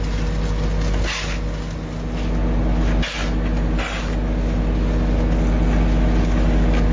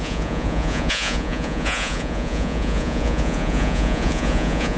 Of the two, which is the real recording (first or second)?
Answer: first